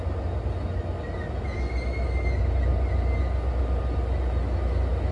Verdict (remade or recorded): recorded